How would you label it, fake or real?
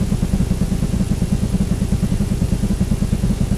fake